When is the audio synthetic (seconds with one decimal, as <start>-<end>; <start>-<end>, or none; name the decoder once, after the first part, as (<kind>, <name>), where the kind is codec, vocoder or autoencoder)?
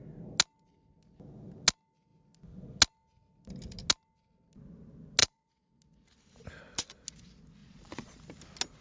5.2-5.8 (vocoder, Vocos); 7.6-8.2